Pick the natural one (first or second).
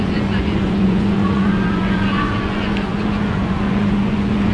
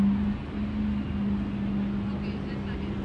second